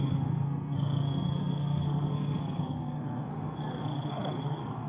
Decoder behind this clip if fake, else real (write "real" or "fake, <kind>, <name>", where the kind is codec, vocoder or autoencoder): fake, codec, SNAC